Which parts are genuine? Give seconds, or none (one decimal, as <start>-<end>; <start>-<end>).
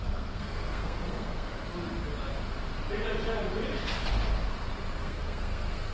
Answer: 1.5-5.0